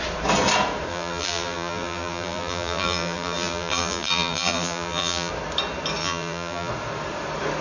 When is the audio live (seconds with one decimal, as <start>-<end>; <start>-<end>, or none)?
0.0-0.9; 5.3-6.0; 6.7-7.6